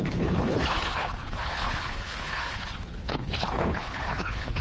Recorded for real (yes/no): no